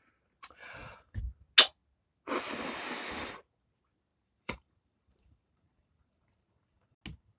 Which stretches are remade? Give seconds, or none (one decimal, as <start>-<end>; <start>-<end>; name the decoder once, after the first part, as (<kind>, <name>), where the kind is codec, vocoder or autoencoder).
0.4-1.2 (vocoder, BigVGAN v2); 4.1-7.0